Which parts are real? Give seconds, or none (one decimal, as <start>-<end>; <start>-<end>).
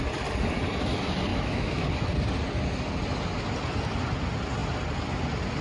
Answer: 0.0-1.3; 1.9-5.6